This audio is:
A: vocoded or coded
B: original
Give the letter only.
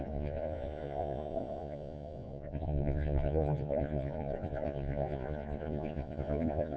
A